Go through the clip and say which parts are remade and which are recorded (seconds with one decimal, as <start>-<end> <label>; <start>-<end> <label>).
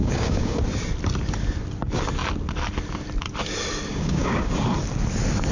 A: 0.0-0.6 remade; 0.6-3.9 recorded; 3.9-4.5 remade; 4.5-5.5 recorded